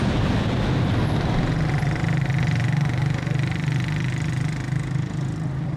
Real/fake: real